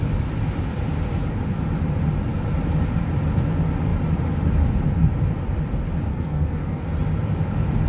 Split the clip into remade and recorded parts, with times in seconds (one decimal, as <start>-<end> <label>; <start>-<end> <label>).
0.0-6.1 recorded; 6.1-6.8 remade; 6.8-7.9 recorded